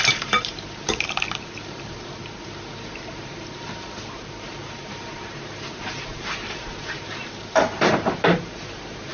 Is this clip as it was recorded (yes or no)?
no